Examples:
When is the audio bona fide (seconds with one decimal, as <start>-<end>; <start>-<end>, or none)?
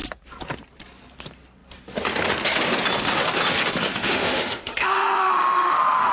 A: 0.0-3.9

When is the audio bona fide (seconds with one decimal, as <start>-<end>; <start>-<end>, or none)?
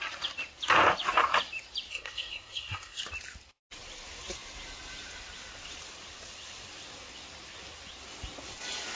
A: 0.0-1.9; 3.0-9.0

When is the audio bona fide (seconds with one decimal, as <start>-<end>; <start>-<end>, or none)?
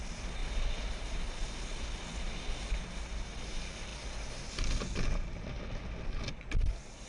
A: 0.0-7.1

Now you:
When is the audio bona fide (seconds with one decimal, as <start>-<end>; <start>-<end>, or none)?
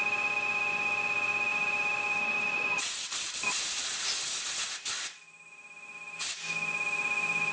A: 0.0-1.5; 4.0-7.5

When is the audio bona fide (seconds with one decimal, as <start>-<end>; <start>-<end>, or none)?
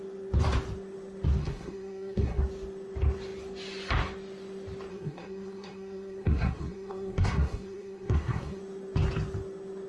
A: 0.0-1.4; 2.4-4.9; 8.6-9.9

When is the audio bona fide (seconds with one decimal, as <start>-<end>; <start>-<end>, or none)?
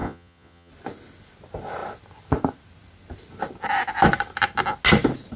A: 0.7-5.4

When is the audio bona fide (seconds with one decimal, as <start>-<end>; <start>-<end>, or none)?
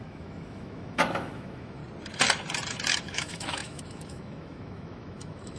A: 1.8-3.0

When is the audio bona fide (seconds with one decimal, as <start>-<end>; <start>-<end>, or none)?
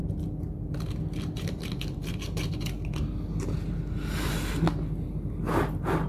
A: 0.0-6.1